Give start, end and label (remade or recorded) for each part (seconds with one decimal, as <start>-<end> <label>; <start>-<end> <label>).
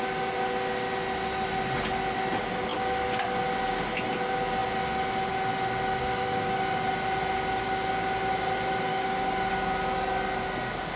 0.0-5.9 recorded; 5.9-6.6 remade; 6.6-8.9 recorded; 8.9-9.5 remade; 9.5-11.0 recorded